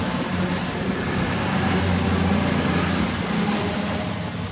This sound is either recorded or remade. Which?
recorded